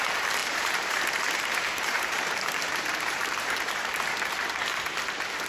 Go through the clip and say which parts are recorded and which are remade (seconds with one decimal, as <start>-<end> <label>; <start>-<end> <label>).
0.0-0.4 recorded; 0.4-3.7 remade; 3.7-5.5 recorded